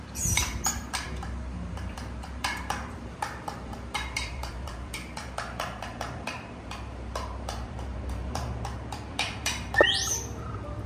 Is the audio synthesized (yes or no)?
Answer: yes